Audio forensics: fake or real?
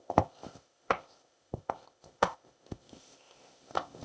fake